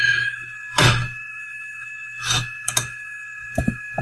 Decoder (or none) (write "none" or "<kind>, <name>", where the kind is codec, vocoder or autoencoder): autoencoder, DAC-VAE